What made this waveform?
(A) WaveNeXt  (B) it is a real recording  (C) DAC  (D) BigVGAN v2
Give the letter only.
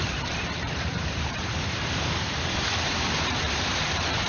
D